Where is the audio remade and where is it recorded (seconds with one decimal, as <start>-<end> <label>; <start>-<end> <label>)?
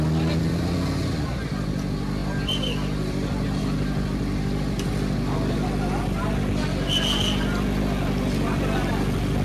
0.0-9.4 recorded